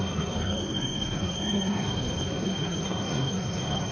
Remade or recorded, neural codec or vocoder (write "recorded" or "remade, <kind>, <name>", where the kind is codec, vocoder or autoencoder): remade, codec, SNAC